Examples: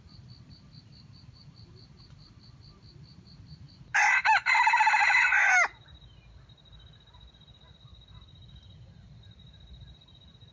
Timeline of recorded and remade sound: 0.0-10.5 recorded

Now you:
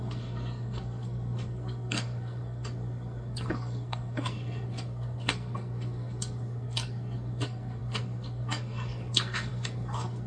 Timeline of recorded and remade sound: 0.0-10.3 remade

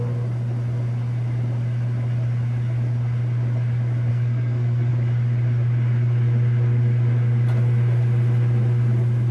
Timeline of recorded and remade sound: 0.0-4.1 recorded; 4.1-4.9 remade; 4.9-9.3 recorded

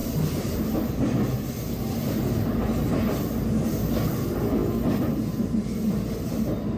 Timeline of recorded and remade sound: 0.0-0.9 remade; 0.9-6.8 recorded

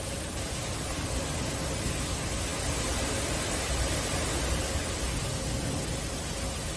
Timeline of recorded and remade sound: 0.0-6.8 recorded

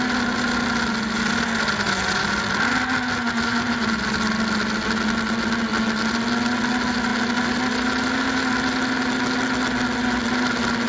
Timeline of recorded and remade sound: 0.0-10.9 recorded